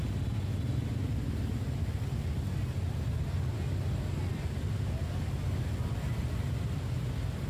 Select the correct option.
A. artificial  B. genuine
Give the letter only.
B